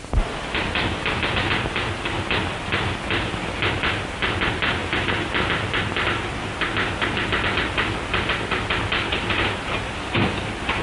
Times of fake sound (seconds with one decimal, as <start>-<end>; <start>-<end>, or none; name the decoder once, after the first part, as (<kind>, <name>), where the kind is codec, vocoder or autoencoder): none